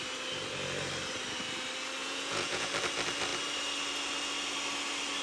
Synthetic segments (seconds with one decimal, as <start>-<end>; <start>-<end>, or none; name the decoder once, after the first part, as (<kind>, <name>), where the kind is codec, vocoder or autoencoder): 2.0-2.7 (vocoder, Vocos)